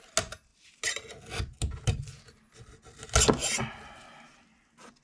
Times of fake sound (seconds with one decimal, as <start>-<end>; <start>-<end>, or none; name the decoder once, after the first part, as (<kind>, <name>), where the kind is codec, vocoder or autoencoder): none